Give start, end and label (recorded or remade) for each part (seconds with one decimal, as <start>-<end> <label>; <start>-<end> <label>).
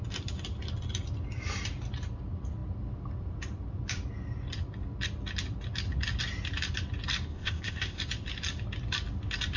0.0-7.3 recorded; 7.3-8.0 remade; 8.0-9.6 recorded